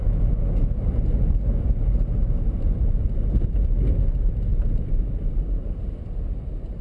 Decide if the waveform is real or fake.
real